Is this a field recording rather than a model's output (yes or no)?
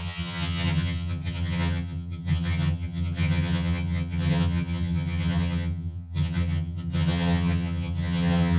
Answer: no